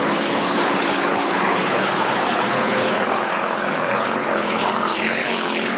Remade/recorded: remade